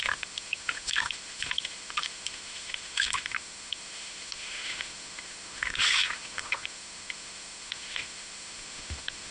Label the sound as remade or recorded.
remade